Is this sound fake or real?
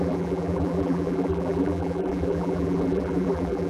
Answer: fake